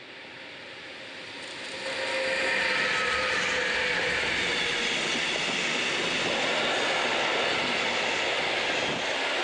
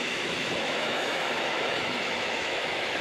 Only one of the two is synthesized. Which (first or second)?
second